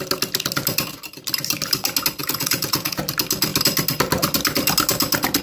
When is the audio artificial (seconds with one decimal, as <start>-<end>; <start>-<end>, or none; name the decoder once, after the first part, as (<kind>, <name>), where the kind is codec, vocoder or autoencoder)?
2.2-3.0 (vocoder, Vocos)